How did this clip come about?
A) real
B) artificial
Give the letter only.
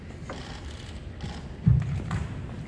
B